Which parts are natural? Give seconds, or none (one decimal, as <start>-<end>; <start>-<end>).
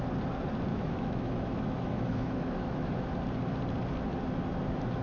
0.0-0.7; 3.1-5.0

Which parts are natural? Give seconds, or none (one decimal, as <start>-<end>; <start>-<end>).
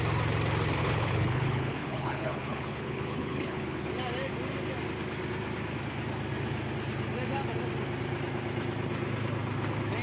0.0-0.8; 3.9-10.0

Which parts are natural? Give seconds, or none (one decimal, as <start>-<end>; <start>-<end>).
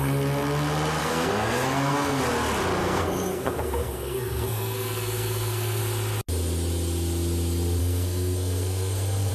0.0-1.0; 2.2-2.8; 5.8-7.8